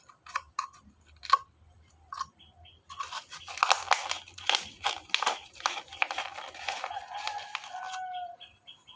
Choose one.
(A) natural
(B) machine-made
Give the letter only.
A